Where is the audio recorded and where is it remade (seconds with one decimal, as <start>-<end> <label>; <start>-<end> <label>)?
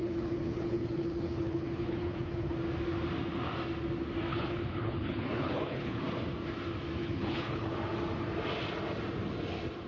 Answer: 0.0-2.5 remade; 2.5-4.3 recorded; 4.3-6.0 remade; 6.0-7.0 recorded; 7.0-7.7 remade; 7.7-9.9 recorded